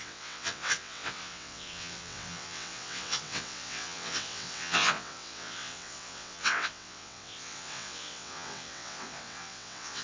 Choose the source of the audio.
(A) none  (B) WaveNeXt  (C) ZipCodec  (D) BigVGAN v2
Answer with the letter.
B